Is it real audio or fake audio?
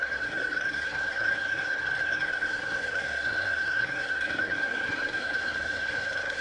fake